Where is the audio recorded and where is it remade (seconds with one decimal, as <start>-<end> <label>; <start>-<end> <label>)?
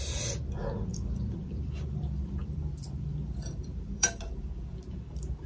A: 0.0-0.9 recorded; 0.9-4.2 remade; 4.2-5.5 recorded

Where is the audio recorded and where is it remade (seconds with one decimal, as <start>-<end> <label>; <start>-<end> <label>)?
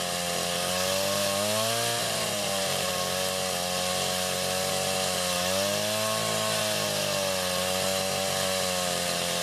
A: 0.0-2.0 recorded; 2.0-2.9 remade; 2.9-9.4 recorded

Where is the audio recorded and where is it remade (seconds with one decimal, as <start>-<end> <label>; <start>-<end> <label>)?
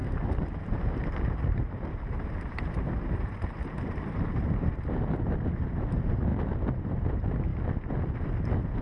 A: 0.0-6.3 remade; 6.3-6.8 recorded; 6.8-7.5 remade; 7.5-8.8 recorded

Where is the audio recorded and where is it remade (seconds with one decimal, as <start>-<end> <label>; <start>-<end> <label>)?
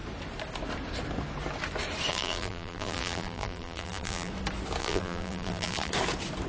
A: 0.0-2.1 recorded; 2.1-4.3 remade; 4.3-4.8 recorded; 4.8-5.9 remade; 5.9-6.5 recorded